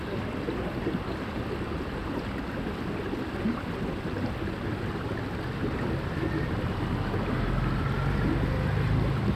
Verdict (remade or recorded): recorded